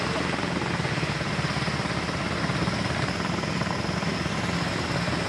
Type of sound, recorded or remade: recorded